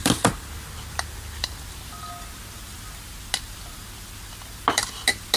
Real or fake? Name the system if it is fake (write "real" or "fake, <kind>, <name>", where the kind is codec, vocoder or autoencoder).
real